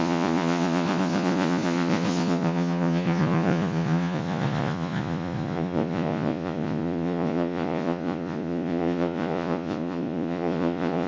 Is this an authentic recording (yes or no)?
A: no